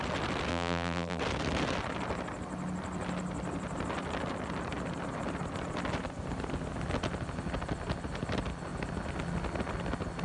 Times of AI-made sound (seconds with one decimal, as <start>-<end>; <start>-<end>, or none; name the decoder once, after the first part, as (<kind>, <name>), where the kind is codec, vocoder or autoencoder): 0.5-1.2 (vocoder, BigVGAN v2)